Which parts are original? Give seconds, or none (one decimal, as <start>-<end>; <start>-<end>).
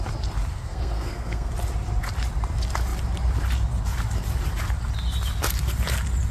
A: 0.0-0.5; 1.5-6.3